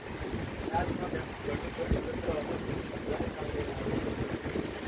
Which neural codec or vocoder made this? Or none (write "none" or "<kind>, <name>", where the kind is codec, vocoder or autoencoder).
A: none